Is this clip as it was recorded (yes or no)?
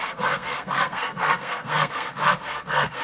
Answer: no